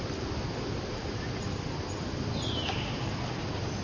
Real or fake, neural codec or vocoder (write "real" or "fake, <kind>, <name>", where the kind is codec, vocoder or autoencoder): real